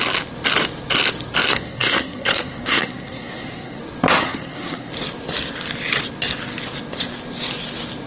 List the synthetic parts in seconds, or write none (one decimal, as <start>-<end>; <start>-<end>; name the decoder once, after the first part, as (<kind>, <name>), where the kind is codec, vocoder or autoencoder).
1.5-3.8 (codec, SNAC); 4.2-4.9